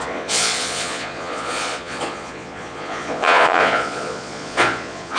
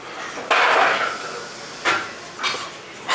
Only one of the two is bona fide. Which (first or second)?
second